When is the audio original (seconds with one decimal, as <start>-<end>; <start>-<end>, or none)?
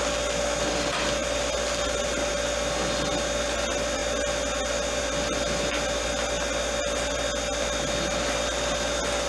0.0-9.3